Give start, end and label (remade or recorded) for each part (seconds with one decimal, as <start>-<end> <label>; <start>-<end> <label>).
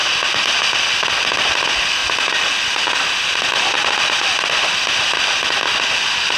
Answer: 0.0-6.4 recorded